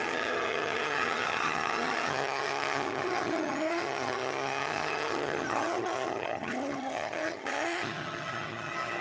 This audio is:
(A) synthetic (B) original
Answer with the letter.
A